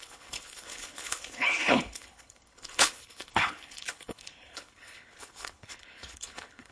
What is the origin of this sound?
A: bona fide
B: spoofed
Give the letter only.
B